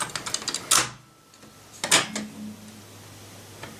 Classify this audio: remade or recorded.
recorded